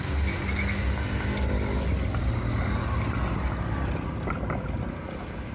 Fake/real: real